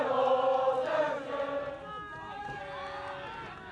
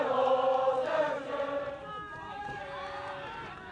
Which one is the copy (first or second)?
second